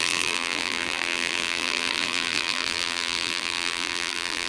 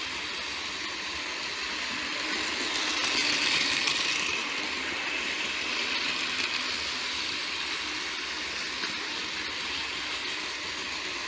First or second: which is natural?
second